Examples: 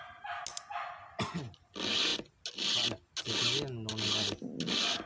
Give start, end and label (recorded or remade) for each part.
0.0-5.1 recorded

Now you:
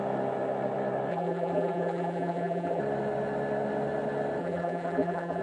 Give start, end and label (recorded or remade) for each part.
0.0-1.1 recorded; 1.1-2.8 remade; 2.8-4.4 recorded; 4.4-5.4 remade

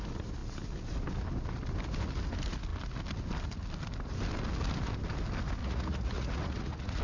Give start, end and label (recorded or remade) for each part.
0.0-5.6 recorded; 5.6-7.0 remade